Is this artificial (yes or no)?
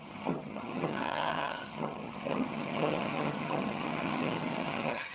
yes